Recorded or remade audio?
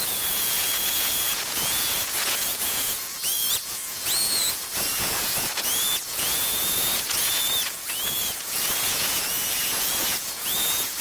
remade